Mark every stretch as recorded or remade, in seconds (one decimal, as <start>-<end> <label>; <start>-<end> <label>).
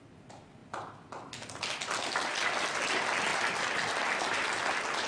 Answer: 0.0-5.1 recorded